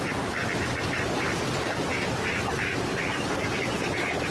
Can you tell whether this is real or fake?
real